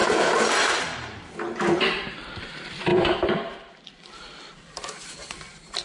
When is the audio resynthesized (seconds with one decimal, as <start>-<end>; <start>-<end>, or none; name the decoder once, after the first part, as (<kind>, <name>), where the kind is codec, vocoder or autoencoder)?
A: 0.8-5.8 (vocoder, BigVGAN v2)